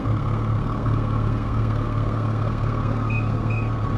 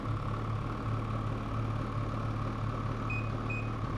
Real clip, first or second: second